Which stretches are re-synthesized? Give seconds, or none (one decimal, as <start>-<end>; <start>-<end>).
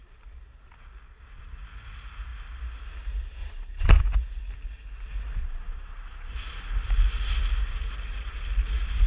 3.4-4.0; 5.4-6.3